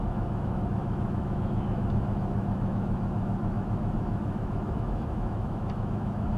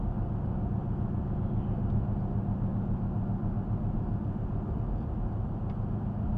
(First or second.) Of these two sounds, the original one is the second